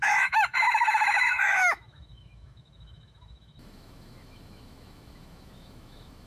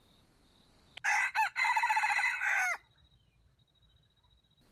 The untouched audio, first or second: second